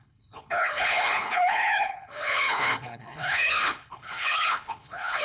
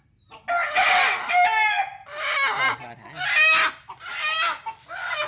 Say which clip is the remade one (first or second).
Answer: first